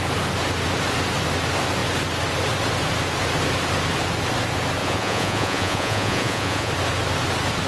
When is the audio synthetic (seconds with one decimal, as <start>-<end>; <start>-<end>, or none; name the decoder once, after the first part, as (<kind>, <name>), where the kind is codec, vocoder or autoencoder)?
4.8-6.7 (vocoder, Vocos)